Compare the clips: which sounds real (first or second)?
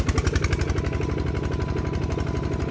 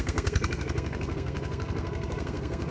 first